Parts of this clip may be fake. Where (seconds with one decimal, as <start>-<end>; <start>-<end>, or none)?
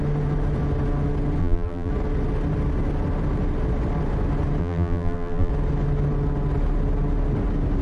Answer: 1.4-1.9; 4.6-5.5